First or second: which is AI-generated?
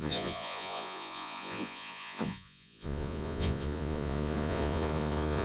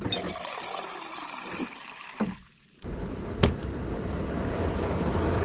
first